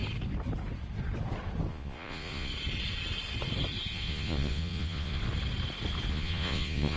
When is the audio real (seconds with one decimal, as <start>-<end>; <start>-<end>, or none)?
0.0-1.7; 2.5-3.9; 5.2-6.1